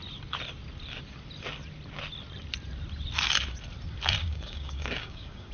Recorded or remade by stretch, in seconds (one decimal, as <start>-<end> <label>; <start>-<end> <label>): 0.0-4.2 recorded; 4.2-5.5 remade